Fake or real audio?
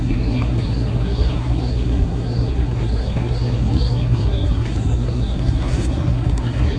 fake